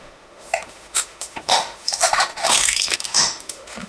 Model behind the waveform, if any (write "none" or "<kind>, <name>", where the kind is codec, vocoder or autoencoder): autoencoder, DAC-VAE